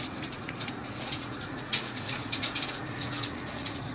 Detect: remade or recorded remade